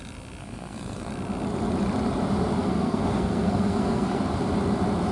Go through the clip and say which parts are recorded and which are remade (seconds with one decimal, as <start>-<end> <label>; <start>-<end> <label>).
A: 0.0-0.4 recorded; 0.4-1.1 remade; 1.1-2.6 recorded; 2.6-4.2 remade; 4.2-5.1 recorded